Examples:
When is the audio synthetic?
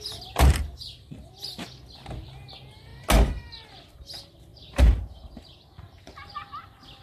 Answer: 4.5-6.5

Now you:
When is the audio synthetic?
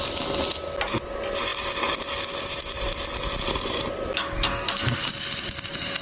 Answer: 4.5-5.1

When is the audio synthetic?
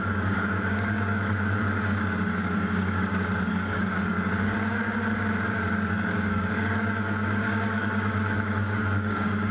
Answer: 0.0-5.0; 5.5-9.5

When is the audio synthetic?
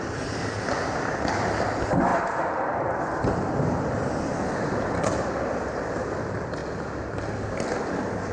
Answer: 0.0-6.6; 7.4-8.3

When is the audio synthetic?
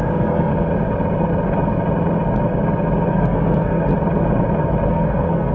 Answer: 0.0-0.5; 3.1-3.9; 4.9-5.5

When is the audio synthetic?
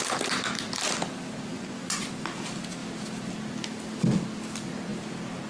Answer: 1.5-2.1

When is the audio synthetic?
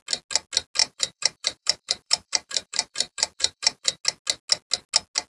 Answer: 0.8-4.0